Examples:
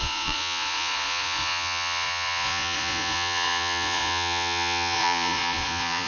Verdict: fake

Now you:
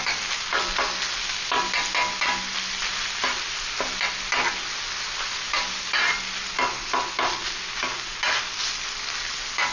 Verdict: real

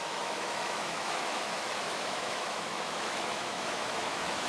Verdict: fake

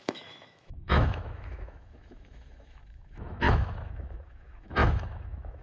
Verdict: fake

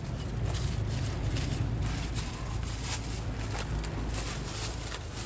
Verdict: real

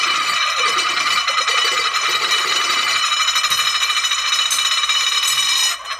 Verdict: real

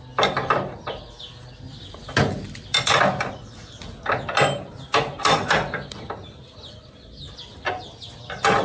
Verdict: real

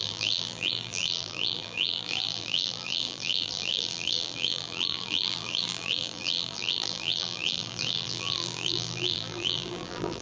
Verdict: fake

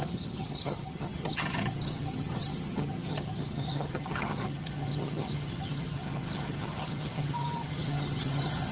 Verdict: fake